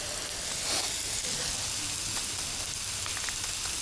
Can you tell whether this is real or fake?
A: real